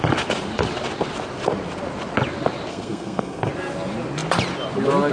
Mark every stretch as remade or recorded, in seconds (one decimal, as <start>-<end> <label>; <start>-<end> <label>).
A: 0.0-2.7 recorded; 2.7-3.5 remade; 3.5-5.1 recorded